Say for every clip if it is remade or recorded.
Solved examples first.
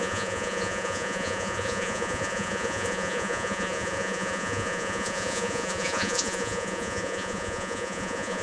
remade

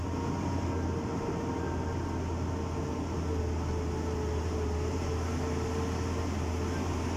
recorded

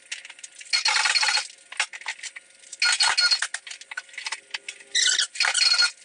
recorded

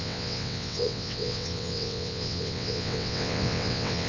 remade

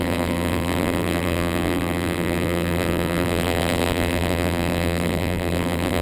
remade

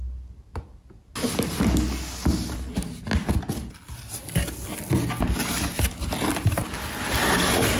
recorded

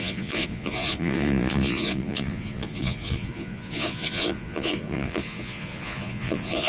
remade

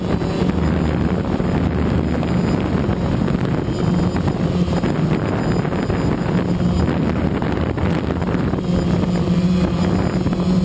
recorded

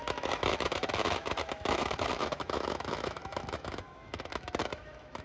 remade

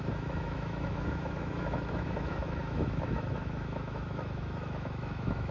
remade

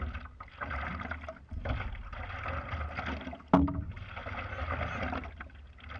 recorded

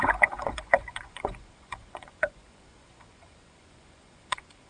remade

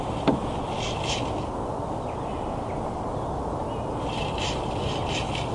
recorded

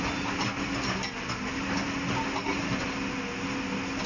recorded